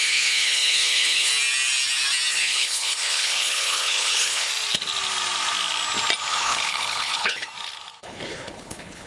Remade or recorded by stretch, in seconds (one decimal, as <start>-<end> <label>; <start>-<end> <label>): 0.0-1.3 remade; 1.3-2.3 recorded; 2.3-4.5 remade; 4.5-6.3 recorded; 6.3-7.5 remade; 7.5-8.0 recorded; 8.0-9.1 remade